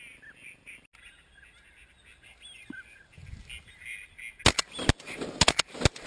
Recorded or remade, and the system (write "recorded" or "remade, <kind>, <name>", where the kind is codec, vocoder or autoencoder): recorded